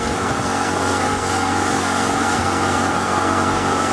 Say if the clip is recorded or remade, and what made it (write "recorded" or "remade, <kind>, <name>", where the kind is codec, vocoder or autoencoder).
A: remade, codec, SNAC